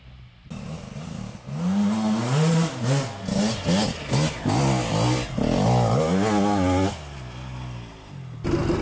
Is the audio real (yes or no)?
yes